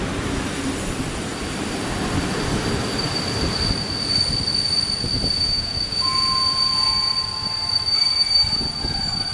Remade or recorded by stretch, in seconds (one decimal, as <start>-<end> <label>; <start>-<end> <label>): 0.0-5.1 recorded; 5.1-7.1 remade; 7.1-9.3 recorded